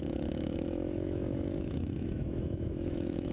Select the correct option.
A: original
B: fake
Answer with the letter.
B